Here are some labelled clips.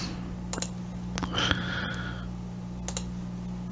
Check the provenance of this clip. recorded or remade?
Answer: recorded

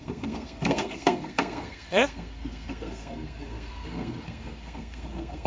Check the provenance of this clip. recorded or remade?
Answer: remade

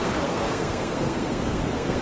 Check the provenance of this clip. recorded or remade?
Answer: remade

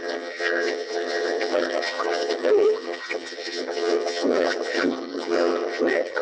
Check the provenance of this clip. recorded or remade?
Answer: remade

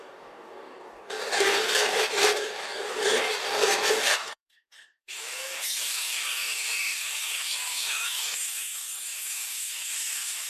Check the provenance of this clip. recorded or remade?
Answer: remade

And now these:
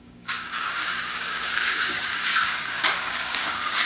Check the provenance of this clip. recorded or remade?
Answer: remade